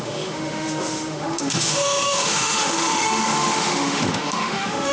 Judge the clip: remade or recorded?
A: remade